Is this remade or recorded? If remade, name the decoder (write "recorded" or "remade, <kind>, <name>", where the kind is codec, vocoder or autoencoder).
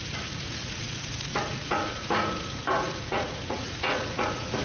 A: remade, vocoder, Vocos